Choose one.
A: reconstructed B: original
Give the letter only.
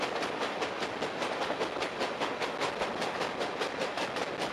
B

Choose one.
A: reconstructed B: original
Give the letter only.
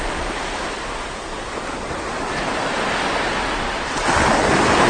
B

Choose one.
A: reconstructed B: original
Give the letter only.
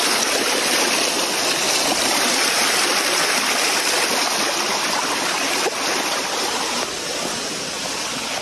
B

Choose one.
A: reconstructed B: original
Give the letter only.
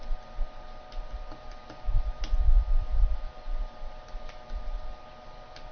B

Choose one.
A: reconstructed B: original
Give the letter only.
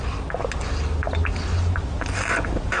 B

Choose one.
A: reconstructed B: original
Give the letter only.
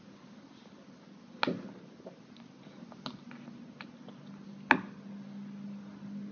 B